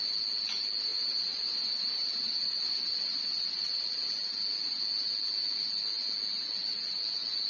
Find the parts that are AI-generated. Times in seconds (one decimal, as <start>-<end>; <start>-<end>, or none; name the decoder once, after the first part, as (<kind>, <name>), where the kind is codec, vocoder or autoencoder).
0.9-4.1 (vocoder, BigVGAN v2)

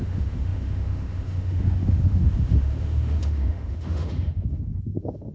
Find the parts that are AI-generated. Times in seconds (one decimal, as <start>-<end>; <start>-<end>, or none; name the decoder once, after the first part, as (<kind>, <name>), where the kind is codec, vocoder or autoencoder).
0.0-5.3 (autoencoder, DAC-VAE)

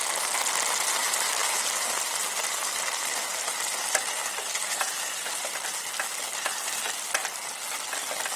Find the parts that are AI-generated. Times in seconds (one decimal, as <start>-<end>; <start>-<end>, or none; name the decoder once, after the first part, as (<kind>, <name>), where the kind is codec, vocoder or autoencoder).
1.0-5.8 (vocoder, BigVGAN v2)

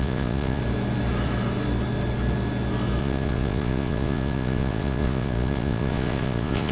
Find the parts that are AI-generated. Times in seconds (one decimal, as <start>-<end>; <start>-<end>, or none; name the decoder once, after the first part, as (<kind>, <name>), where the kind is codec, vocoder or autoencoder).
0.0-0.6 (vocoder, Vocos); 3.0-6.7

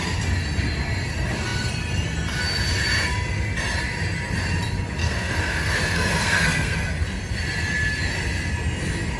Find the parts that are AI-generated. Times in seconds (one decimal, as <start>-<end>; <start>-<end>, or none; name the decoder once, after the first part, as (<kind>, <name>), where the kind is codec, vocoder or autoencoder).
5.0-6.9 (codec, SNAC)

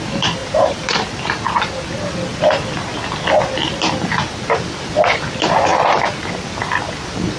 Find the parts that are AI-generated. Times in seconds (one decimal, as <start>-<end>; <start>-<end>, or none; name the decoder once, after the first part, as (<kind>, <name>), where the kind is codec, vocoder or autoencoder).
0.4-1.2 (vocoder, BigVGAN v2)

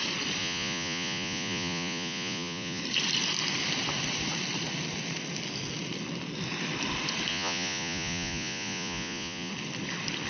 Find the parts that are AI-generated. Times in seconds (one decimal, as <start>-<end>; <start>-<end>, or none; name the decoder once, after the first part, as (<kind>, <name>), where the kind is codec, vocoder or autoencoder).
0.4-2.8 (vocoder, Vocos); 7.3-9.5

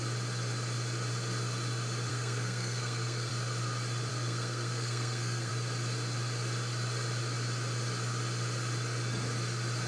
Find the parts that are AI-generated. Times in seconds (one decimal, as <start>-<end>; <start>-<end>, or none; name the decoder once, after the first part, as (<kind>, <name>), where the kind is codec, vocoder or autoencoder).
2.1-3.3 (codec, SNAC); 4.1-5.5